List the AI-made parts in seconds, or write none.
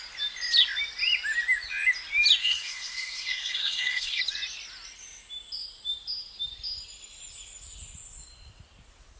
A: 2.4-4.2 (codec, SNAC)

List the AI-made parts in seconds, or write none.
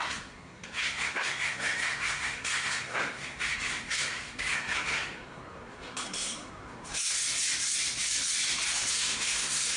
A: 0.0-7.2 (codec, SNAC); 8.9-9.8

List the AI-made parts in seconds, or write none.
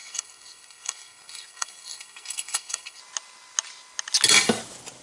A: 0.0-3.0 (codec, SNAC)